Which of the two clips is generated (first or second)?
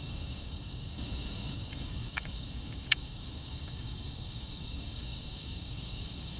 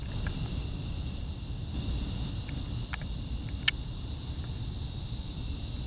first